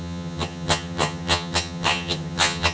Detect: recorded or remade remade